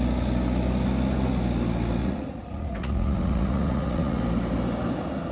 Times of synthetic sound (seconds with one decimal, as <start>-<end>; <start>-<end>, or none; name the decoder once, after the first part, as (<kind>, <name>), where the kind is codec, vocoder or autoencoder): 2.0-4.2 (vocoder, Vocos)